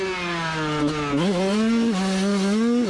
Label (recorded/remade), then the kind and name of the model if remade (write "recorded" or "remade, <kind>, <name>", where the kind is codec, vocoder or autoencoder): recorded